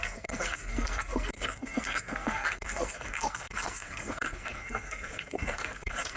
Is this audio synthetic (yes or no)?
yes